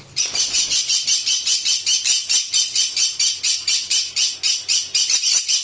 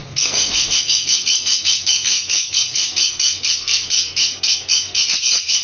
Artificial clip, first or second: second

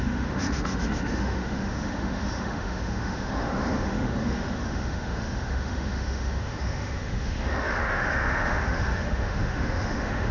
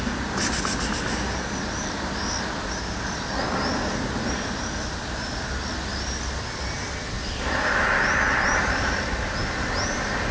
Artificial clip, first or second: first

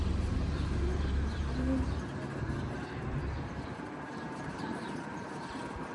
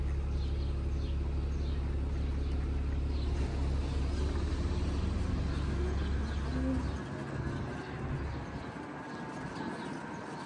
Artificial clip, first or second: first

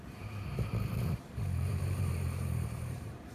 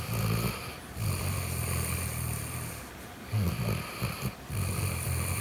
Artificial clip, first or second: first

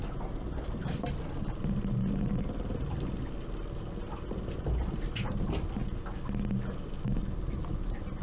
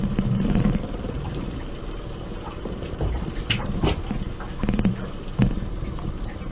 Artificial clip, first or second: second